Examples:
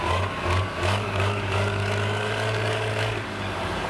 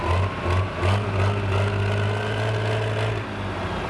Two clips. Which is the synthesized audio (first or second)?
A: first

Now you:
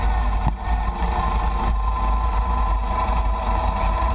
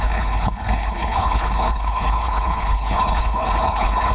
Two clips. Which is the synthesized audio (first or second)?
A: second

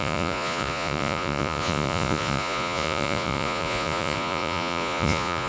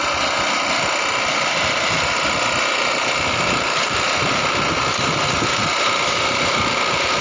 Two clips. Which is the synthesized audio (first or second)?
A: first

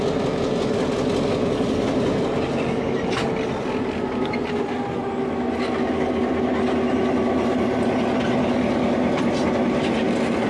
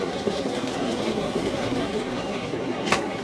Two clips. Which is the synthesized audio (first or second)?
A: second